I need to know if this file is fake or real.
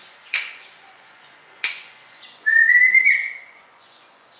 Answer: fake